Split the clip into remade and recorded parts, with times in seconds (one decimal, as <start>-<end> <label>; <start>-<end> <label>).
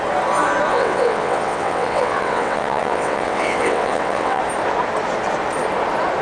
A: 0.0-0.7 recorded; 0.7-4.4 remade; 4.4-6.2 recorded